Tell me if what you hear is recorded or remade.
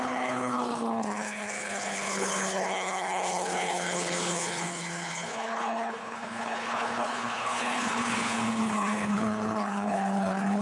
remade